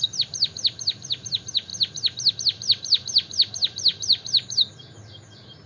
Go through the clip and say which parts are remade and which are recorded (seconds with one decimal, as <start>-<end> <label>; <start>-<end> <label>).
0.0-5.7 recorded